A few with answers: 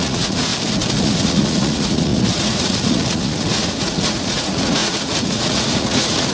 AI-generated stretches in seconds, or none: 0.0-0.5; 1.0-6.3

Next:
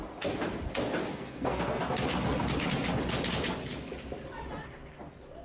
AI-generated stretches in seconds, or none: 1.1-1.8

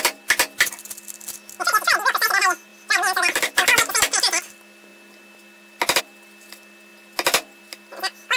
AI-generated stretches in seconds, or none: 2.7-3.5

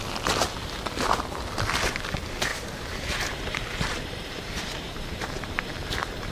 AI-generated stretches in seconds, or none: 2.5-6.3

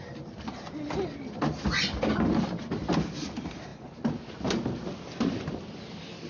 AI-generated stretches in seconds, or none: none